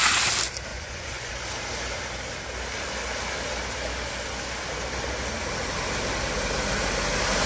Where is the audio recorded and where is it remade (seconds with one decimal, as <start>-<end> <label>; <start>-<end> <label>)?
0.0-0.7 recorded; 0.7-1.3 remade; 1.3-7.5 recorded